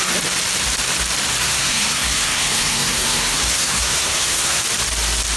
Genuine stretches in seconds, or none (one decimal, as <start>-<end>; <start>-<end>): 0.0-1.4; 4.6-5.4